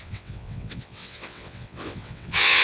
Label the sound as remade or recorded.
remade